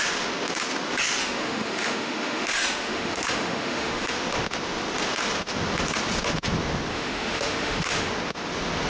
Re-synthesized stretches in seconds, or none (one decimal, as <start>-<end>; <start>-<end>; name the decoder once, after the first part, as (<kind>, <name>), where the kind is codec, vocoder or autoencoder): 1.2-4.1 (autoencoder, DAC-VAE); 6.9-8.1